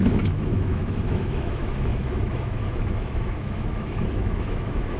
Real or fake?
fake